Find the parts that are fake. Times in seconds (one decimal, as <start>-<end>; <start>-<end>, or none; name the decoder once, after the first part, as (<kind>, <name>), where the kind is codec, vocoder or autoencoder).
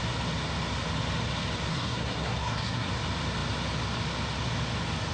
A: 1.7-2.9 (codec, SNAC)